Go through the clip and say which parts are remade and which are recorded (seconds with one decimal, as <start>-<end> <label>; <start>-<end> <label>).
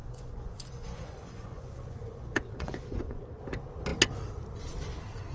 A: 0.0-3.2 remade; 3.2-5.3 recorded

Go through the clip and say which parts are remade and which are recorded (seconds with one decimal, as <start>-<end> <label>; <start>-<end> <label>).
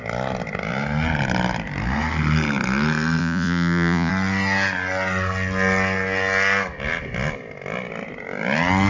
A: 0.0-3.2 recorded; 3.2-4.1 remade; 4.1-8.9 recorded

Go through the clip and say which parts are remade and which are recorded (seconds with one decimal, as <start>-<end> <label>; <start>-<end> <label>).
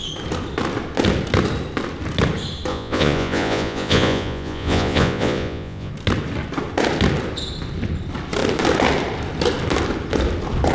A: 0.0-2.7 recorded; 2.7-5.9 remade; 5.9-10.7 recorded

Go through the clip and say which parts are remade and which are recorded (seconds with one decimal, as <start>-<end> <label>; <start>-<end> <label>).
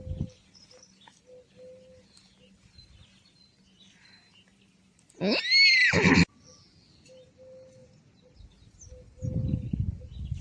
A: 0.0-10.4 recorded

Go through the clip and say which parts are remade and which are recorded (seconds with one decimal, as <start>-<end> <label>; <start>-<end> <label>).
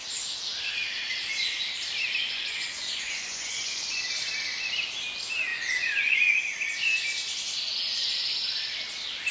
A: 0.0-2.2 recorded; 2.2-4.0 remade; 4.0-5.5 recorded; 5.5-6.4 remade; 6.4-9.3 recorded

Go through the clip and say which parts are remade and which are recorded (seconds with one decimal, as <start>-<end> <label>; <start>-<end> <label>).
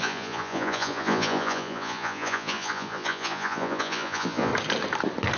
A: 0.0-4.5 remade; 4.5-5.4 recorded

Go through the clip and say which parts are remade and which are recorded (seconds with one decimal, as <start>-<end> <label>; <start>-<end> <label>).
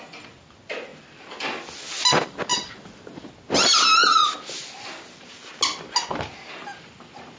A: 0.0-7.4 recorded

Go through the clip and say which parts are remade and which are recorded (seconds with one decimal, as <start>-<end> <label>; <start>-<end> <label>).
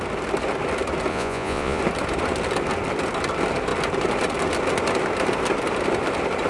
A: 0.0-1.1 recorded; 1.1-1.8 remade; 1.8-6.5 recorded